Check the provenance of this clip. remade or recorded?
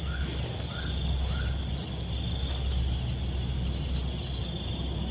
recorded